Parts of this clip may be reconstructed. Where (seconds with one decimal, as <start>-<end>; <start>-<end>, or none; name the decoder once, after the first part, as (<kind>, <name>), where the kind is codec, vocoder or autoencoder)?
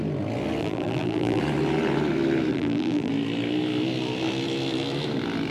0.6-1.4 (vocoder, BigVGAN v2); 2.5-3.1